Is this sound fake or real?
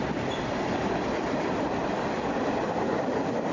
real